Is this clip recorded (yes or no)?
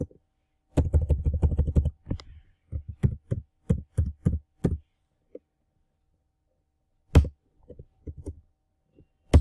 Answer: yes